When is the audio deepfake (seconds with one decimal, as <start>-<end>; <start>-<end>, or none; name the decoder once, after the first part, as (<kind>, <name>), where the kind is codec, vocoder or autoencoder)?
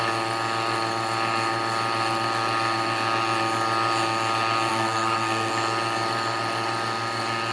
4.7-5.5 (codec, SNAC)